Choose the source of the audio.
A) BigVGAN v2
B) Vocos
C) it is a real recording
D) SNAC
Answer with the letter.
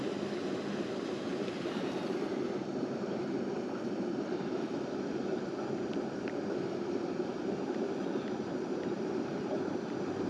A